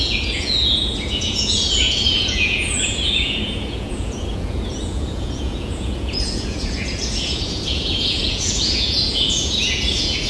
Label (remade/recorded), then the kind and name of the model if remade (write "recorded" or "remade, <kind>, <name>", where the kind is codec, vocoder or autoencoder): remade, vocoder, Vocos